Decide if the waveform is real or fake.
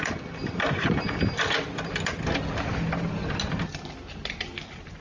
real